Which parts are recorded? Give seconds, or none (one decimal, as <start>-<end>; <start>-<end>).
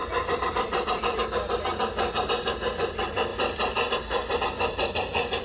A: 0.0-0.5; 1.2-2.3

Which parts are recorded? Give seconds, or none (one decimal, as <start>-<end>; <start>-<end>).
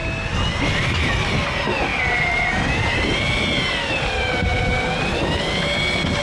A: 0.0-1.9; 3.2-4.5; 5.0-6.2